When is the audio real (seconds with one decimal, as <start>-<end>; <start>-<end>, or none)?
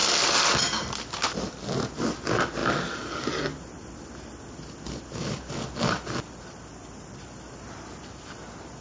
0.0-8.8